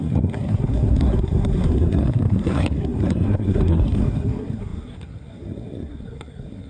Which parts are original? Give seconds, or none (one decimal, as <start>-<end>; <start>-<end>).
none